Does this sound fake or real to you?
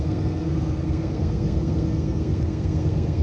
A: fake